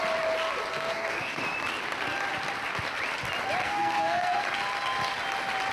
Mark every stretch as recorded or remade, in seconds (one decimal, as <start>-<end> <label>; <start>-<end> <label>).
0.0-0.7 recorded; 0.7-1.4 remade; 1.4-3.6 recorded; 3.6-4.4 remade; 4.4-5.7 recorded